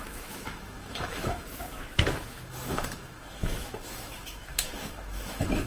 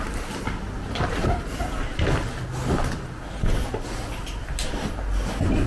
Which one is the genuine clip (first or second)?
second